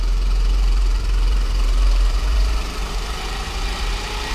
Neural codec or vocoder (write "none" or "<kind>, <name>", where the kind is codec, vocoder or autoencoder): vocoder, BigVGAN v2